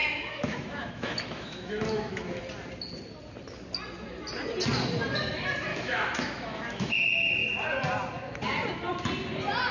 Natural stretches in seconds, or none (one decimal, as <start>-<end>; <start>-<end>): 2.4-5.7; 6.9-9.7